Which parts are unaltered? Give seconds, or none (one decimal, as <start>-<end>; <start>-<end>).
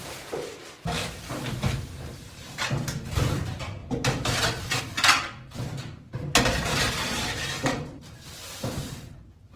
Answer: 1.0-3.3